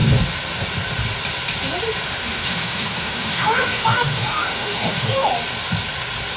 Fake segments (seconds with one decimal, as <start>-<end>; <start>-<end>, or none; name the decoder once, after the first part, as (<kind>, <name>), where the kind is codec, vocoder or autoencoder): 2.2-5.3 (autoencoder, DAC-VAE)

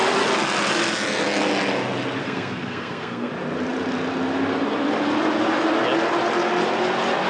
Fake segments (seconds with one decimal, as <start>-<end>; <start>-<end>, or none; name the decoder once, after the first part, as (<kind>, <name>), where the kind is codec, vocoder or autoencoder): 2.2-3.3 (codec, SNAC)